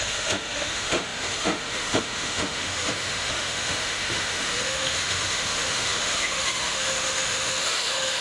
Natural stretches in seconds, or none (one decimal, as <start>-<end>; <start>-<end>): none